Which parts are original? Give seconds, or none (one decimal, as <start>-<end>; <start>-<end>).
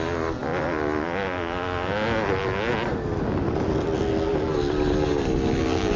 0.0-6.0